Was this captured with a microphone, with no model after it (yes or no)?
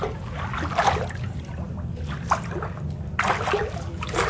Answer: yes